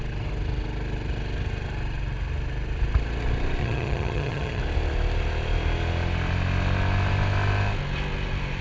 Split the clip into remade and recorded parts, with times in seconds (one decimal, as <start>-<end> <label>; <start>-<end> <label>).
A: 0.0-3.6 recorded; 3.6-4.6 remade; 4.6-8.6 recorded

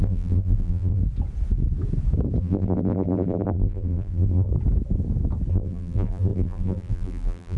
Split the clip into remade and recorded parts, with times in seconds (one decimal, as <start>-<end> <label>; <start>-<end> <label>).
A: 0.0-1.0 remade; 1.0-2.4 recorded; 2.4-4.5 remade; 4.5-5.5 recorded; 5.5-7.6 remade

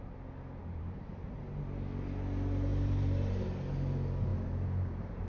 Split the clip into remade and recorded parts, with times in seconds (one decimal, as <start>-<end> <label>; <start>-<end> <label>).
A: 0.0-0.6 recorded; 0.6-1.4 remade; 1.4-2.7 recorded; 2.7-3.5 remade; 3.5-5.3 recorded

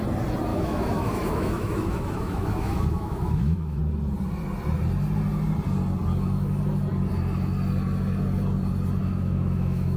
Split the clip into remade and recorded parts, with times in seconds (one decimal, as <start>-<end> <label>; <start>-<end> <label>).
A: 0.0-0.5 recorded; 0.5-3.8 remade; 3.8-9.0 recorded; 9.0-10.0 remade

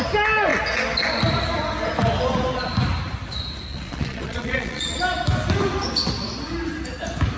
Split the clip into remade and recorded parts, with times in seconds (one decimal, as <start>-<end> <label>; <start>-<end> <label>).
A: 0.0-3.7 recorded; 3.7-5.0 remade; 5.0-7.4 recorded

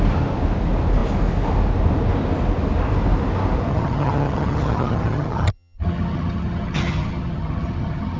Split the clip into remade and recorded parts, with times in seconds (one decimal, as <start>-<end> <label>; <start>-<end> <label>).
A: 0.0-3.7 recorded; 3.7-8.2 remade